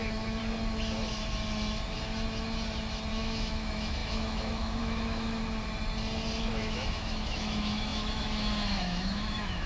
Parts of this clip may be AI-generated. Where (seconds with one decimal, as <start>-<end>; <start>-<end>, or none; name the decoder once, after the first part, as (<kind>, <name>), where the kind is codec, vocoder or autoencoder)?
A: 0.0-0.4 (autoencoder, DAC-VAE); 3.1-5.4; 6.4-9.7